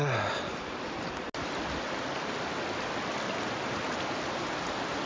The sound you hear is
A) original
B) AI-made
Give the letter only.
A